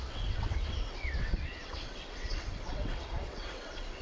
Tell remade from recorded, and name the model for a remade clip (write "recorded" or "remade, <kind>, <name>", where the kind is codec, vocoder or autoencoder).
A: remade, vocoder, WaveNeXt